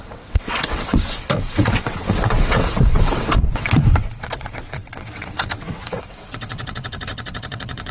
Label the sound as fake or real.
fake